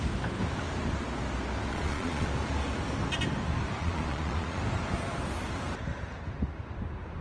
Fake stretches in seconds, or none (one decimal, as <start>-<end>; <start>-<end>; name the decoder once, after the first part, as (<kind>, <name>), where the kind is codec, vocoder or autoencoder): 1.7-2.3 (vocoder, Vocos); 3.8-4.6